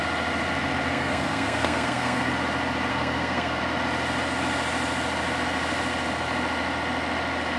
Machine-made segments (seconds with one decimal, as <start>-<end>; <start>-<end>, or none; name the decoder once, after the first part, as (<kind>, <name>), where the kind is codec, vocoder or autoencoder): 0.9-2.3 (codec, SNAC); 2.9-3.6